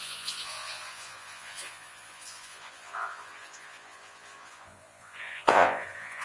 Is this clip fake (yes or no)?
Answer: yes